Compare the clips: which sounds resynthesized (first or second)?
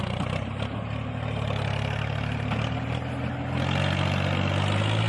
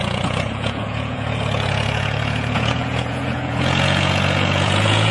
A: second